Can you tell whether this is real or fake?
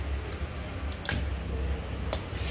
real